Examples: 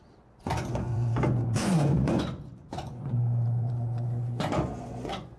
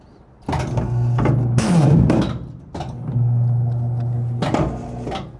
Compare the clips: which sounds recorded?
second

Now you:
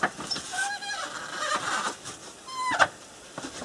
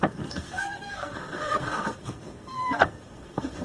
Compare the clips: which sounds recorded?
first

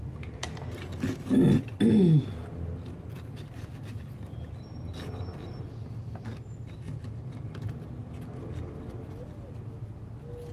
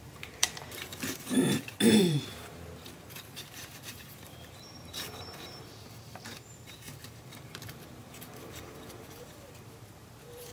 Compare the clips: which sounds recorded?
first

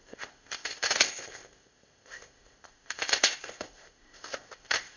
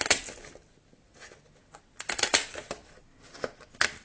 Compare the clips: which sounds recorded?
second